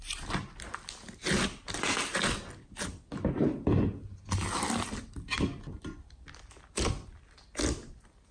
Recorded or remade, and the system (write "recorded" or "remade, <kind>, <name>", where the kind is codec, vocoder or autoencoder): recorded